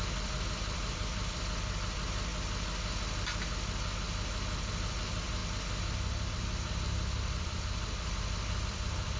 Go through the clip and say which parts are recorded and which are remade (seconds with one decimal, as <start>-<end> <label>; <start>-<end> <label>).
0.0-2.3 remade; 2.3-4.7 recorded; 4.7-5.4 remade; 5.4-6.3 recorded; 6.3-9.2 remade